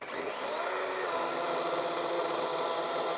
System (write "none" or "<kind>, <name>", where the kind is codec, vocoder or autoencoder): none